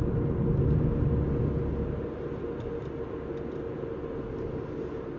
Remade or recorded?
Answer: recorded